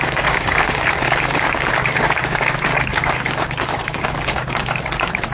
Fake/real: fake